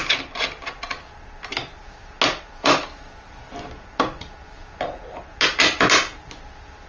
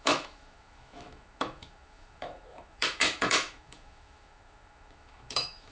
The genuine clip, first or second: first